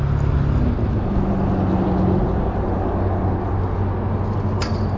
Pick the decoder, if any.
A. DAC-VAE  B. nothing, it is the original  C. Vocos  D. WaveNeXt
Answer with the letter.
B